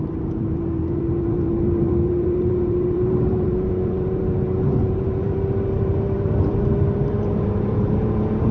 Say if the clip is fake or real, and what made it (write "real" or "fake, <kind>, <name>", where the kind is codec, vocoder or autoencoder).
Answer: fake, vocoder, BigVGAN v2